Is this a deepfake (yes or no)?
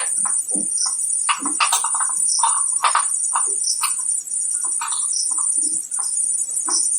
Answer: yes